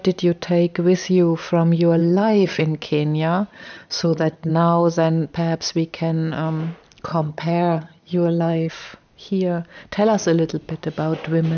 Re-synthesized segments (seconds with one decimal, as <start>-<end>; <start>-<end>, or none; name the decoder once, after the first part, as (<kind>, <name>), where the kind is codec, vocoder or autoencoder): 2.0-2.6 (vocoder, HiFi-GAN); 3.5-4.5; 7.1-8.7

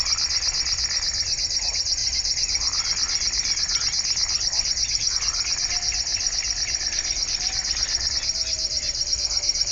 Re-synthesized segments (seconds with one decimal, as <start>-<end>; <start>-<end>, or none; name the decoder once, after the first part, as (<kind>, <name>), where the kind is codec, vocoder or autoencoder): none

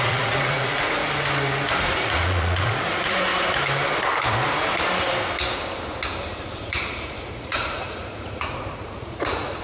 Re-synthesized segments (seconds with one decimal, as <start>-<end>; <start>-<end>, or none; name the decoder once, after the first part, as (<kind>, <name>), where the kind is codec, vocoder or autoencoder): 0.0-1.0 (vocoder, Vocos); 1.8-3.3; 6.6-9.6